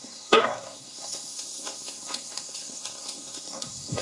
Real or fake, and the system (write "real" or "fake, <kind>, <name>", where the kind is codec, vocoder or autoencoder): fake, codec, SNAC